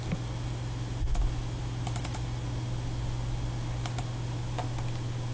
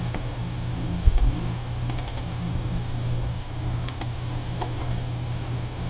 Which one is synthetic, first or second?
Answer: second